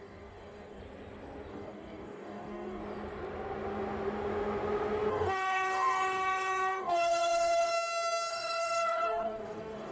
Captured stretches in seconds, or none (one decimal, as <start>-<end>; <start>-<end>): 0.8-1.5; 2.8-5.1; 7.7-8.3